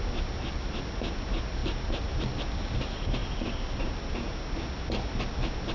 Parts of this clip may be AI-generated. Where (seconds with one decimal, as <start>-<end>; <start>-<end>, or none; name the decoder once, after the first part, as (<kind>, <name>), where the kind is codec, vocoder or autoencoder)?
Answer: none